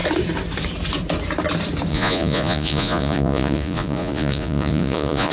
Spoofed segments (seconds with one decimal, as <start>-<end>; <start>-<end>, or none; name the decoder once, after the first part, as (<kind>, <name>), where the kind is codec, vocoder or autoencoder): 1.9-5.3 (vocoder, Vocos)